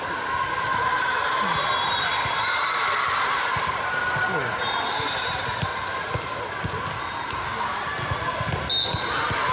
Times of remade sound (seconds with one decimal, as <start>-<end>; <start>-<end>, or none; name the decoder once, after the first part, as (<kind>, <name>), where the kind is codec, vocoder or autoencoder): 0.0-5.7 (vocoder, BigVGAN v2); 6.9-7.9